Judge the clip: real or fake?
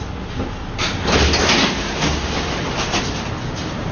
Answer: real